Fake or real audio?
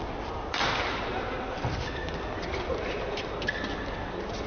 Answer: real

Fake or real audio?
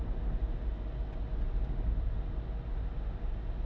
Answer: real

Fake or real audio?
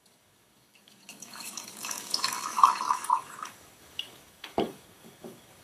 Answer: fake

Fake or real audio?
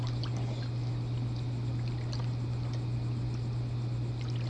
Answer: real